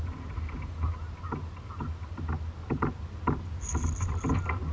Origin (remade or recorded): recorded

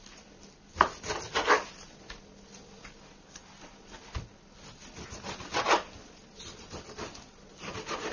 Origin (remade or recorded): recorded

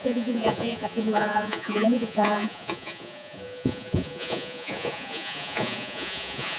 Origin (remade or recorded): remade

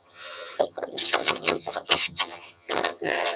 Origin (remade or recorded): remade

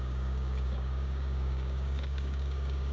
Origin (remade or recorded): remade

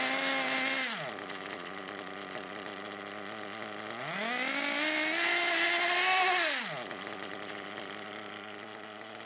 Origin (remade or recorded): recorded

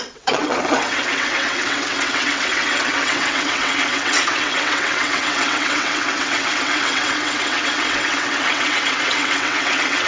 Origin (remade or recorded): remade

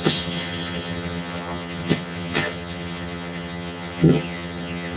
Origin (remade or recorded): remade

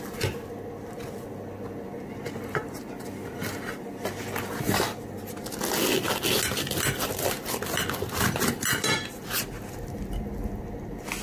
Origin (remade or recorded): recorded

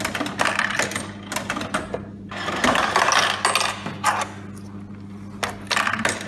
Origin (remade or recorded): recorded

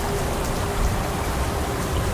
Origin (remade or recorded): recorded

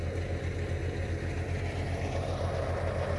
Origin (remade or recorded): recorded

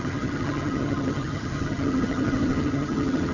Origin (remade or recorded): remade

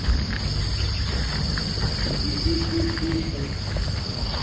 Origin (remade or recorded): recorded